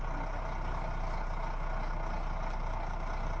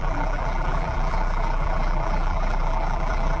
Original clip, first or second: first